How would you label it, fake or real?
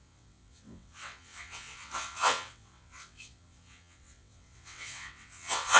fake